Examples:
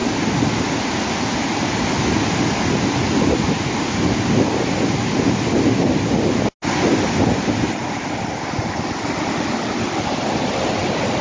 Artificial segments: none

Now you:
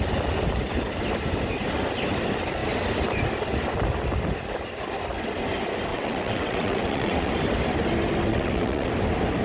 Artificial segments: 5.9-7.3 (vocoder, WaveNeXt); 8.3-8.9